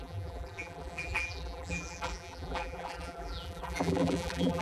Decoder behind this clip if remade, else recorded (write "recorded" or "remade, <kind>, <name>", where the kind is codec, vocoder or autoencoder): remade, vocoder, BigVGAN v2